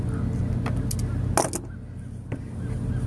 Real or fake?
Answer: real